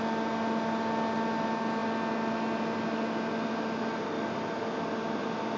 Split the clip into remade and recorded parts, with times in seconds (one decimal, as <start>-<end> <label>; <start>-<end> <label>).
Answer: 0.0-5.6 recorded